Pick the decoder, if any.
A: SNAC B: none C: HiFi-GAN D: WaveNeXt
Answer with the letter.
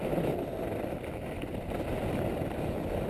B